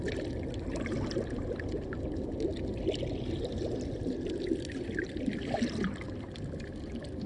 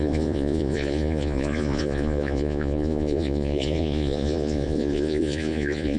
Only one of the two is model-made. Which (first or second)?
second